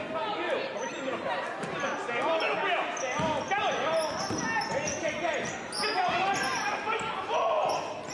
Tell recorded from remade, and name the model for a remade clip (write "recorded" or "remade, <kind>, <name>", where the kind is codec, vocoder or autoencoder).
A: recorded